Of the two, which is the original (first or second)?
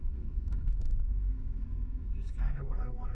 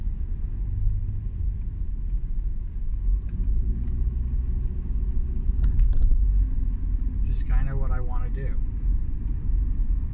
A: second